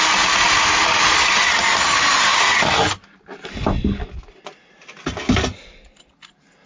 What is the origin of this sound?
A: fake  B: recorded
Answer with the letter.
B